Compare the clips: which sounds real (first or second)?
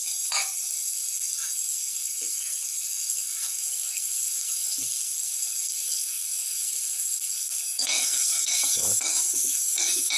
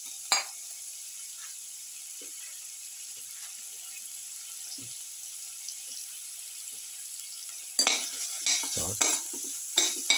second